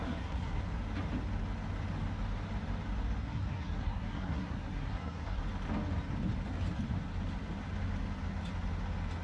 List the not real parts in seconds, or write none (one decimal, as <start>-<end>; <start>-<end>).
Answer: 0.0-0.6; 3.2-5.4